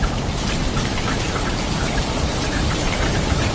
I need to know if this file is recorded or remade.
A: remade